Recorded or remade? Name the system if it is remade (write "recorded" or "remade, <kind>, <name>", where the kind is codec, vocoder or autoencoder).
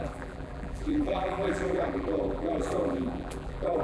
remade, vocoder, BigVGAN v2